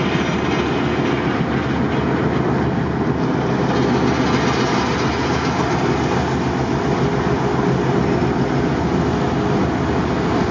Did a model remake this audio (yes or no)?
no